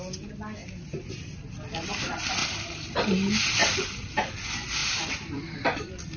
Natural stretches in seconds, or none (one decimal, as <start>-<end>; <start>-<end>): 0.0-0.6; 1.1-4.8; 5.8-6.2

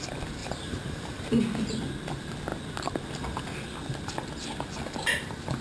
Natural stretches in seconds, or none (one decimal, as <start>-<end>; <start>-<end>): 0.0-0.4; 1.4-5.6

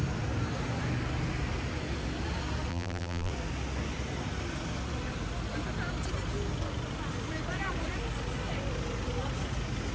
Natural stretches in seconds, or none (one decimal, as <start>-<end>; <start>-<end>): 0.0-2.7; 3.3-9.9